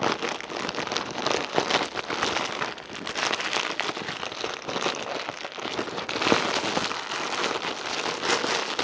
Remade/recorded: recorded